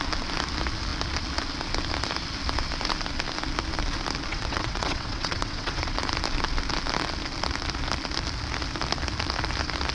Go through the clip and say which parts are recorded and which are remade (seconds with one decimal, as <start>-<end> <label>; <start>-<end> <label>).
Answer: 0.0-4.3 recorded; 4.3-6.0 remade; 6.0-9.9 recorded

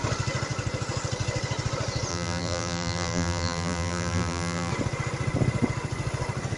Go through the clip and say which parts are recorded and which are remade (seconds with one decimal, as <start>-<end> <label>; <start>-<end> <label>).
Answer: 0.0-2.1 recorded; 2.1-4.7 remade; 4.7-6.6 recorded

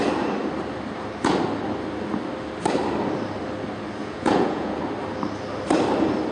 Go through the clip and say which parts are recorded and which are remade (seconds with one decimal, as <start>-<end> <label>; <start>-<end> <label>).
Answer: 0.0-4.0 recorded; 4.0-4.8 remade; 4.8-6.3 recorded

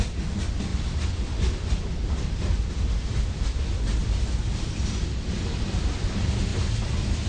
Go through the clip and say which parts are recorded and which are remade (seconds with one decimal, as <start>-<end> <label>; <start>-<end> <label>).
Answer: 0.0-7.3 recorded